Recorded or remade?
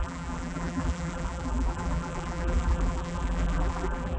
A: remade